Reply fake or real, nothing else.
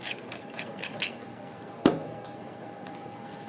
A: fake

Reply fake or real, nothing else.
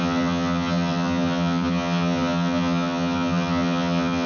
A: fake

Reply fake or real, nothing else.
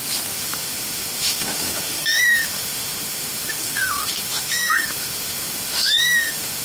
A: fake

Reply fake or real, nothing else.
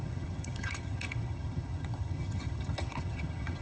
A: fake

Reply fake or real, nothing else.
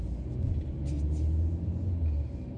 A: real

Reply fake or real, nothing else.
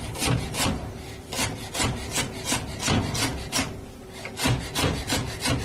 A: real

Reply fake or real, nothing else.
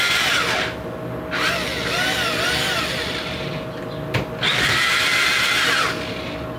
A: real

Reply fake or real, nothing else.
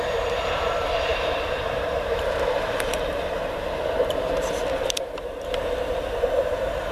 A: fake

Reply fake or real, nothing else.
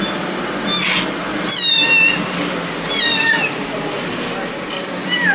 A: real